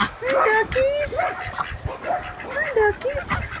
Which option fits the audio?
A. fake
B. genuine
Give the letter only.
B